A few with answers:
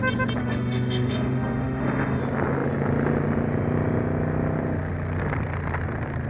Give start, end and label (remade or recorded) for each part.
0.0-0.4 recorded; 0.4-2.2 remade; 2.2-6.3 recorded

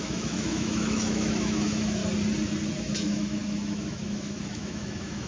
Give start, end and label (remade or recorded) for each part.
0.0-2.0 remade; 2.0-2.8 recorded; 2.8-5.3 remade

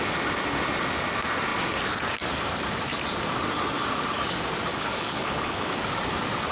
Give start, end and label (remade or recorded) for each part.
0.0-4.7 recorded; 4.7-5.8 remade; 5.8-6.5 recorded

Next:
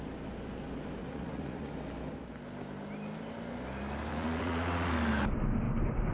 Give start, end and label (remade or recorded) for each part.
0.0-1.0 recorded; 1.0-1.7 remade; 1.7-4.1 recorded; 4.1-4.9 remade; 4.9-6.1 recorded

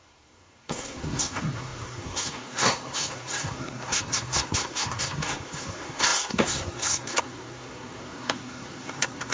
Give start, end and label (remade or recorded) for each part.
0.0-9.3 remade

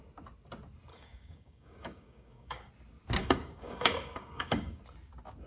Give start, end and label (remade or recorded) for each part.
0.0-0.9 recorded; 0.9-2.7 remade; 2.7-3.2 recorded; 3.2-4.8 remade; 4.8-5.5 recorded

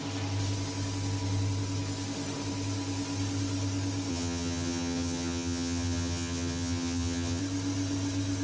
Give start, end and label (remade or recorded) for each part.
0.0-4.1 recorded; 4.1-7.4 remade; 7.4-8.4 recorded